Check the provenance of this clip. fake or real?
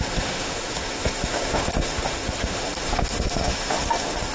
fake